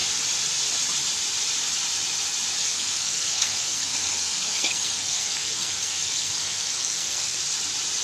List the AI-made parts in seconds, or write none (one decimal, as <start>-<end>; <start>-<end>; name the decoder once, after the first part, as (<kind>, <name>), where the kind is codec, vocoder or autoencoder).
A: 2.6-7.4 (codec, SNAC)